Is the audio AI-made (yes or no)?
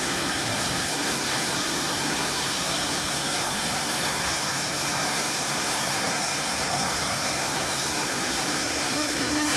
yes